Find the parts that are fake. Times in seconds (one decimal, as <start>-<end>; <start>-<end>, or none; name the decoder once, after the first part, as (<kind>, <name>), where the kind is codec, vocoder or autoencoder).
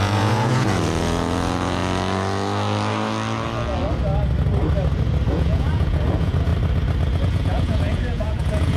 0.0-1.8 (vocoder, Vocos); 5.3-6.5; 7.2-8.8